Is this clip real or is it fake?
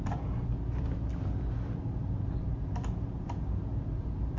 real